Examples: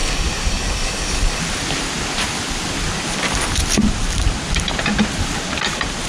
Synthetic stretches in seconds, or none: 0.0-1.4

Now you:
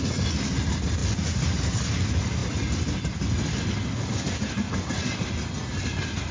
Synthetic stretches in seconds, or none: none